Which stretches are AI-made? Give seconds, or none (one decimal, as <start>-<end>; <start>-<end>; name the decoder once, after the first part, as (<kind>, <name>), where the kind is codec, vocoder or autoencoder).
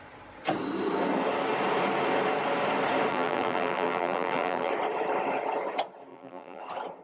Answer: 3.1-4.7 (vocoder, BigVGAN v2); 6.1-6.6